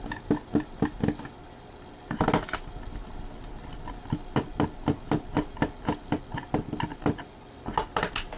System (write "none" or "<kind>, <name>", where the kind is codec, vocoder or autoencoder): none